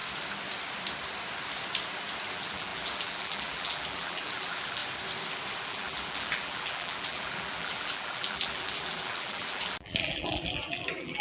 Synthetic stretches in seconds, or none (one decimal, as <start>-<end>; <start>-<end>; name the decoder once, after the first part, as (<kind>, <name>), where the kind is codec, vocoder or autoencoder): 2.3-4.8 (vocoder, BigVGAN v2); 5.6-11.2